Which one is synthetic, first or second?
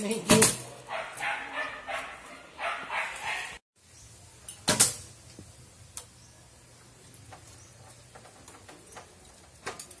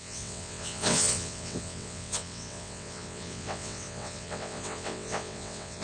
second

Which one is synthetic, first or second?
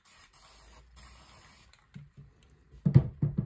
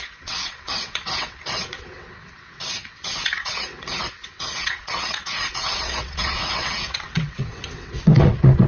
second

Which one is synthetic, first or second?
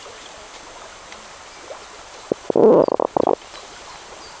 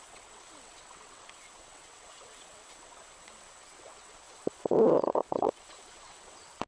second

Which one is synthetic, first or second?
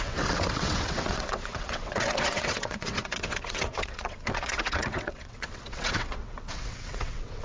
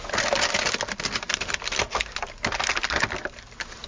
first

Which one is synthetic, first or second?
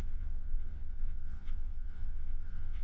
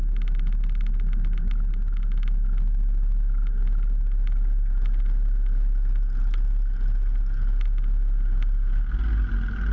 first